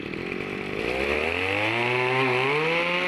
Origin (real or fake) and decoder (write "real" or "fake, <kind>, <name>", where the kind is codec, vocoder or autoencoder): real